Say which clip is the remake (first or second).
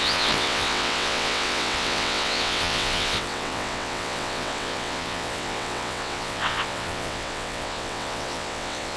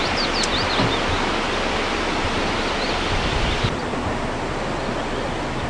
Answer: first